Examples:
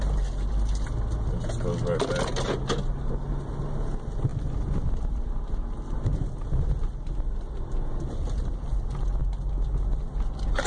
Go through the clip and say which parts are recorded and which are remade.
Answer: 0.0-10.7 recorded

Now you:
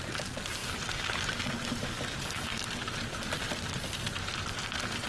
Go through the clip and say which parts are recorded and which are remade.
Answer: 0.0-5.1 recorded